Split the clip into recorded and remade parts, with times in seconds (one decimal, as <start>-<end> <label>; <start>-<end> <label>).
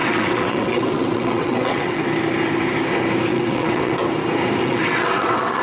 0.0-2.0 remade; 2.0-3.3 recorded; 3.3-4.0 remade; 4.0-4.6 recorded; 4.6-5.6 remade